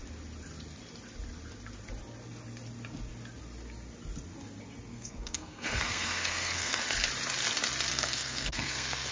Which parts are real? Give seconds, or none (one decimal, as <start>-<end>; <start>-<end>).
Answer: 0.0-4.9; 6.8-7.9